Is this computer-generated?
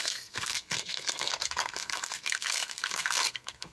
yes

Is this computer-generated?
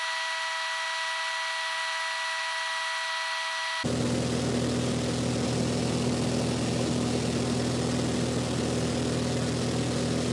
no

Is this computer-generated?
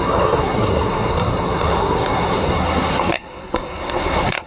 yes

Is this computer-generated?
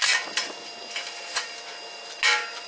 no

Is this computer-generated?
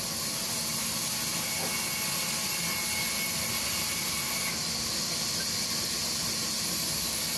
no